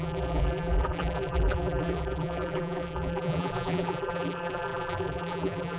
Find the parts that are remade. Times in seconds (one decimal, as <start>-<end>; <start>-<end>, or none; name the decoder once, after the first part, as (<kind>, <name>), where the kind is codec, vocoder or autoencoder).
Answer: 0.0-5.8 (vocoder, BigVGAN v2)